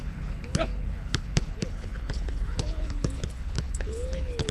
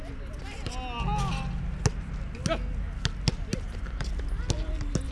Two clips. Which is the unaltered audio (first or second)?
second